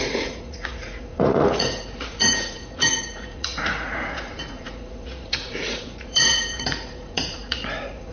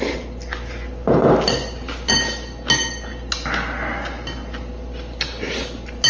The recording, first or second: second